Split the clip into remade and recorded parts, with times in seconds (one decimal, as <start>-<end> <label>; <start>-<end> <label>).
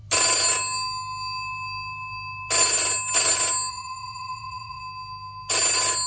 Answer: 0.0-3.7 recorded; 3.7-4.8 remade; 4.8-6.1 recorded